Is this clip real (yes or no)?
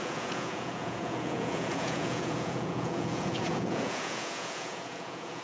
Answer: no